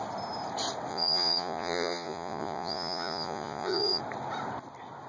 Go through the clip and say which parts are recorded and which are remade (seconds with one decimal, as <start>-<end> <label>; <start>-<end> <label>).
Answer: 0.0-0.9 recorded; 0.9-4.0 remade; 4.0-5.1 recorded